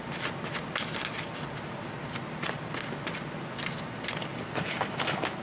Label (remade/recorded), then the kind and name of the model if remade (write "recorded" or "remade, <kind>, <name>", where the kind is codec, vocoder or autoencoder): recorded